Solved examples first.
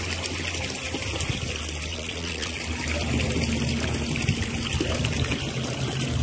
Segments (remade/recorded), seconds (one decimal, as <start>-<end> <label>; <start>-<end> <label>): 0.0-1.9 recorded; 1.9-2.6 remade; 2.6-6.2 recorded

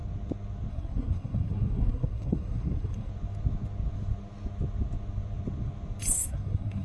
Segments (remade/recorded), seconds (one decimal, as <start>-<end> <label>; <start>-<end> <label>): 0.0-0.7 recorded; 0.7-3.1 remade; 3.1-6.1 recorded; 6.1-6.8 remade

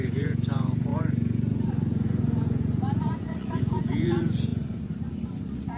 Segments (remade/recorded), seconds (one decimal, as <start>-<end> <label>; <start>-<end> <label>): 0.0-5.8 remade

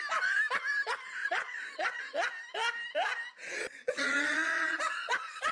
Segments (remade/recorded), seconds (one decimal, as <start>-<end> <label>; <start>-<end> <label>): 0.0-1.2 recorded; 1.2-2.0 remade; 2.0-3.6 recorded; 3.6-5.5 remade

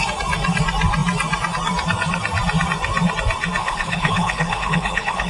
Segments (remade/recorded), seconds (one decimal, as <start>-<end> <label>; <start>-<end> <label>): 0.0-3.6 recorded; 3.6-5.3 remade

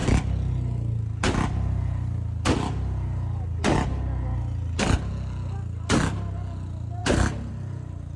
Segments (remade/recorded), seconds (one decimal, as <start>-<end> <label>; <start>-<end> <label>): 0.0-8.2 recorded

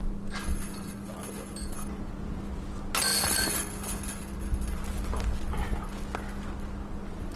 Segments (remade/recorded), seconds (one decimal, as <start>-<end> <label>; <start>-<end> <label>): 0.0-1.5 recorded; 1.5-2.4 remade; 2.4-7.4 recorded

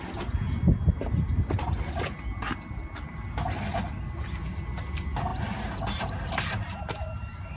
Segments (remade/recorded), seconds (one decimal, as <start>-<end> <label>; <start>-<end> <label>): 0.0-5.3 recorded; 5.3-7.6 remade